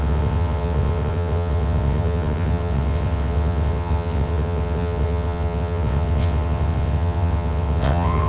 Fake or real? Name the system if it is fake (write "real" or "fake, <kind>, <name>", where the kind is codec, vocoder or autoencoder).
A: fake, vocoder, WaveNeXt